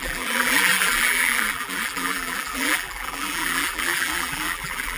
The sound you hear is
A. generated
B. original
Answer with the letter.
A